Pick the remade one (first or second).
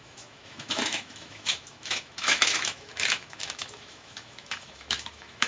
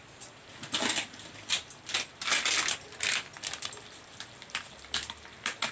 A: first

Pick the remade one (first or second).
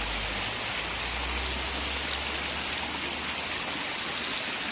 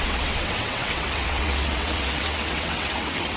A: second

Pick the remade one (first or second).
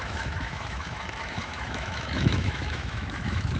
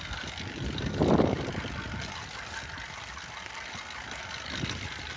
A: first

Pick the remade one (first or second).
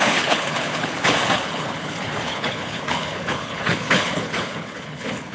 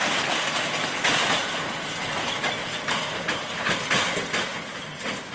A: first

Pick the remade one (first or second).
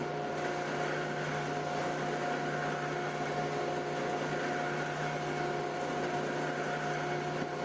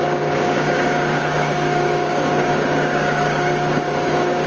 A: second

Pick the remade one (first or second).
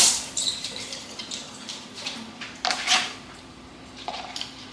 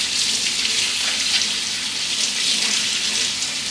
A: first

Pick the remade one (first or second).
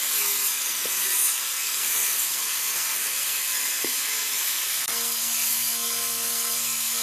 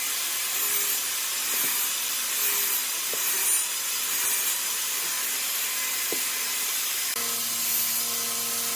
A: first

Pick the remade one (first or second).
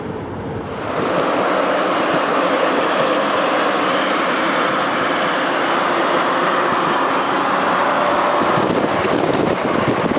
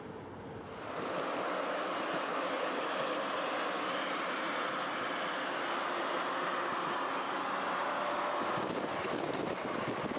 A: first